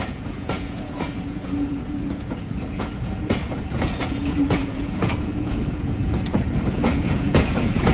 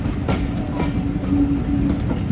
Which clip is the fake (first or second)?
first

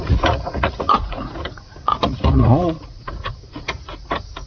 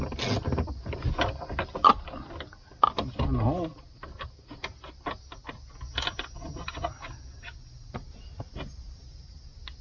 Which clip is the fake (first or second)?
first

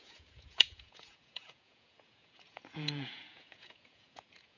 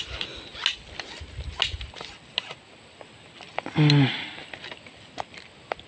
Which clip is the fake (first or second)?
first